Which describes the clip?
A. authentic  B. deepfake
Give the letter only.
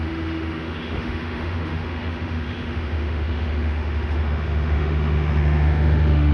B